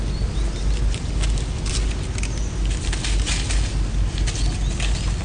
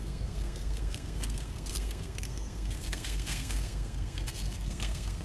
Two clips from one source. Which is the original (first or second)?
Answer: first